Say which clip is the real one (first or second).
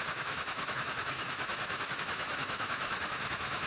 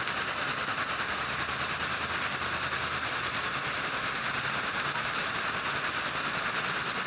second